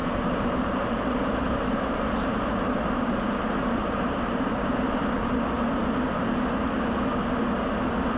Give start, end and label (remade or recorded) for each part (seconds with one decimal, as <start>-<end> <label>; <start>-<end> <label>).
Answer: 0.0-3.4 remade; 3.4-3.8 recorded; 3.8-4.7 remade; 4.7-8.2 recorded